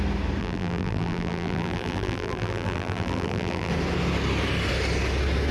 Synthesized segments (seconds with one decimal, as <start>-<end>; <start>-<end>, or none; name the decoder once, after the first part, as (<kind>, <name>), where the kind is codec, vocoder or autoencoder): 0.4-3.7 (vocoder, BigVGAN v2)